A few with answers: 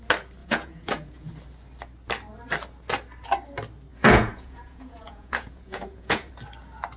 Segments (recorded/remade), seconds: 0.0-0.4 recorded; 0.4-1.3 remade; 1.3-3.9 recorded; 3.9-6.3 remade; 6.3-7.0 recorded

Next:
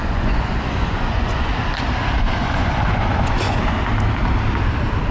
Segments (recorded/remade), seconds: 0.0-1.5 remade; 1.5-2.4 recorded; 2.4-3.6 remade; 3.6-5.1 recorded

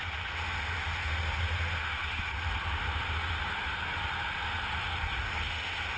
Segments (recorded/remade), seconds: 0.0-6.0 recorded

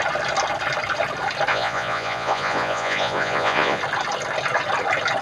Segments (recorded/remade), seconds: 0.0-1.5 recorded; 1.5-3.8 remade; 3.8-5.2 recorded

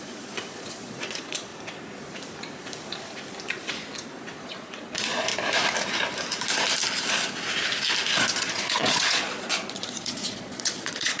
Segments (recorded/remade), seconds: 0.0-1.5 remade; 1.5-4.4 recorded; 4.4-5.3 remade; 5.3-8.2 recorded; 8.2-11.2 remade